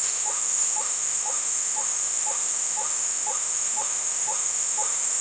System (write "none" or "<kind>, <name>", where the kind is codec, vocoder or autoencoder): autoencoder, DAC-VAE